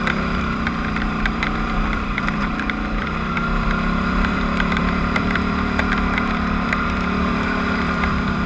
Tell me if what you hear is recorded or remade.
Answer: remade